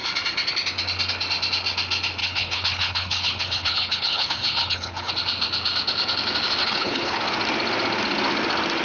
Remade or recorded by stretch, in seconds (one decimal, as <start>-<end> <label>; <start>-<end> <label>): 0.0-2.2 recorded; 2.2-5.1 remade; 5.1-6.6 recorded; 6.6-7.2 remade; 7.2-8.8 recorded